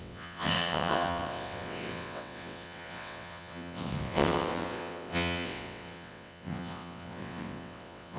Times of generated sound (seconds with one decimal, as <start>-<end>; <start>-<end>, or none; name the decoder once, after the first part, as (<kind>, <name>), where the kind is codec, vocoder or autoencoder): 0.0-8.2 (vocoder, WaveNeXt)